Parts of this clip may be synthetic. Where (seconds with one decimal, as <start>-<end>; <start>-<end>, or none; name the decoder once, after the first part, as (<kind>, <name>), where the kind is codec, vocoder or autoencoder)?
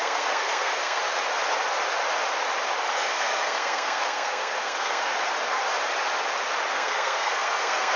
0.0-1.0 (codec, SNAC); 2.9-5.1; 6.7-8.0